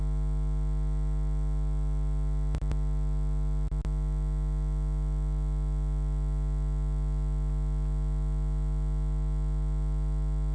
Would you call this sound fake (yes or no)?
no